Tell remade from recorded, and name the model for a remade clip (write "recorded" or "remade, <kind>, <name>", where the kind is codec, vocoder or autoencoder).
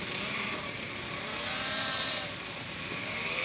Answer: remade, vocoder, BigVGAN v2